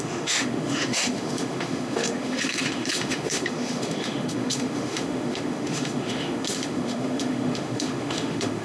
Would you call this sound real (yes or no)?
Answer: no